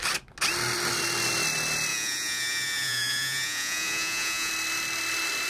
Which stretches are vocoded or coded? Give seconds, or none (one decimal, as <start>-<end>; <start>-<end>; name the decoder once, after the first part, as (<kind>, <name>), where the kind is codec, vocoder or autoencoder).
1.9-4.5 (vocoder, Vocos)